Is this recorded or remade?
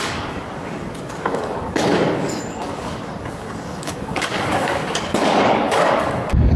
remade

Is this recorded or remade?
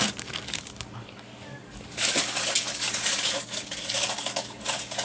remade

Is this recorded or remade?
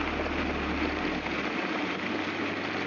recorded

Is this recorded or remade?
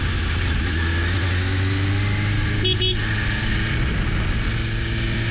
recorded